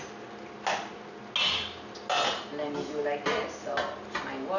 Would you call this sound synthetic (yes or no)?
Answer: no